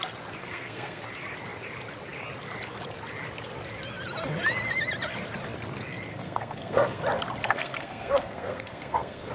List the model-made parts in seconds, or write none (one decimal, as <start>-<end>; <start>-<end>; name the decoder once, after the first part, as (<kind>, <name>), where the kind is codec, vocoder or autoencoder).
0.4-1.0 (codec, SNAC); 6.1-7.0; 7.4-9.3